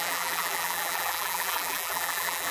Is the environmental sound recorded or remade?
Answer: remade